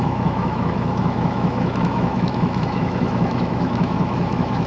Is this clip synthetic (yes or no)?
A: yes